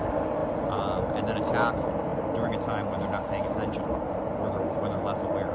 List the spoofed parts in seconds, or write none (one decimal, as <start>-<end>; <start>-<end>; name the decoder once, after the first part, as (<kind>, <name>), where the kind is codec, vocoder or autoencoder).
none